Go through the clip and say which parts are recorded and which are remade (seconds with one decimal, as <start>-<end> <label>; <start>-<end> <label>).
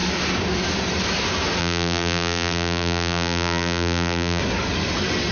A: 0.0-1.6 recorded; 1.6-4.4 remade; 4.4-5.3 recorded